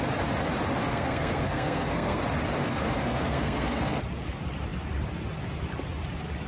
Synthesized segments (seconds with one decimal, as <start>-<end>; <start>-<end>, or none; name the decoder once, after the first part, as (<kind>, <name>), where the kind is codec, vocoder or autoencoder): 0.9-2.2 (codec, SNAC); 2.6-4.0